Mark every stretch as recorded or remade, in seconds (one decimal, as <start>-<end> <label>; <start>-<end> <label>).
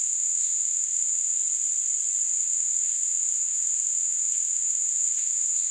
0.0-1.4 remade; 1.4-2.3 recorded; 2.3-5.7 remade